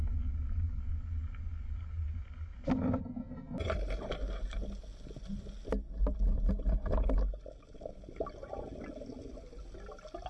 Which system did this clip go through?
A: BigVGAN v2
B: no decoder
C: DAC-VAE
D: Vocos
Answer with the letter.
B